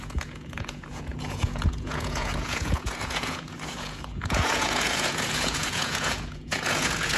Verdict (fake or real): fake